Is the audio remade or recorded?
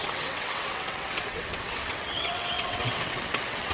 remade